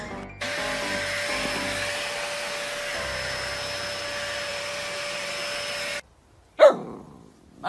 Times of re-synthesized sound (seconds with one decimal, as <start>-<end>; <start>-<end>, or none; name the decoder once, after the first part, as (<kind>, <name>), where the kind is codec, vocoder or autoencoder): 4.5-5.3 (vocoder, BigVGAN v2)